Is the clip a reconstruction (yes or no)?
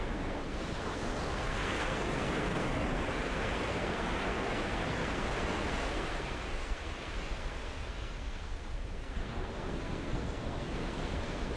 yes